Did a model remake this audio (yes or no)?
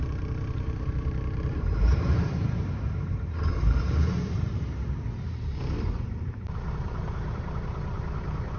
yes